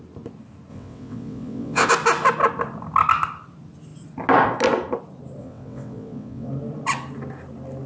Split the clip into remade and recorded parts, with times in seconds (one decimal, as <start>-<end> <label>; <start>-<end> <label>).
0.0-0.7 recorded; 0.7-1.9 remade; 1.9-5.4 recorded; 5.4-6.5 remade; 6.5-7.9 recorded